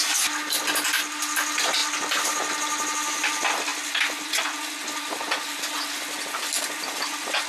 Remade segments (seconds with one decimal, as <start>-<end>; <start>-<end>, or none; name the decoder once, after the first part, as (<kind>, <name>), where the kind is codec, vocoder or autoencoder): none